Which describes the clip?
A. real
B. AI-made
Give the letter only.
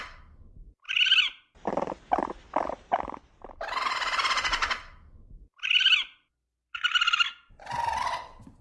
A